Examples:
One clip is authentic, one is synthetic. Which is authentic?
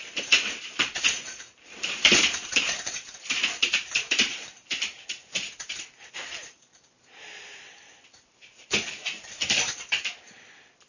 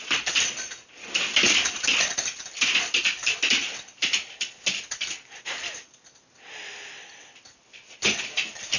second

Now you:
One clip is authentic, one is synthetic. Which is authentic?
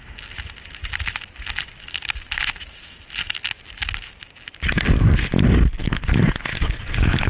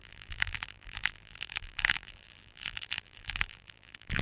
first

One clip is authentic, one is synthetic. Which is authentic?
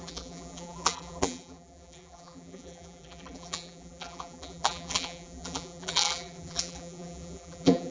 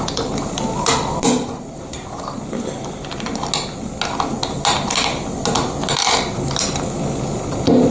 second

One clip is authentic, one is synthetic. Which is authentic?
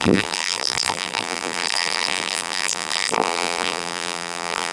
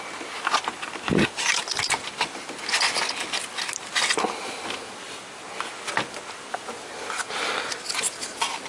second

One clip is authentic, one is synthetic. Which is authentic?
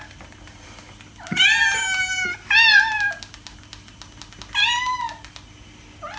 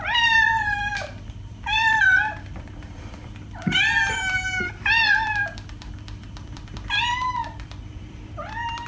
first